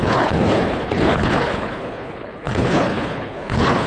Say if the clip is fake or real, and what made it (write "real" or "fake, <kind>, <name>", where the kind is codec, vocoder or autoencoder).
fake, codec, HILCodec